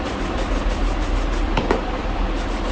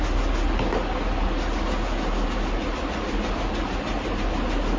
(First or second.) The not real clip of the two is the first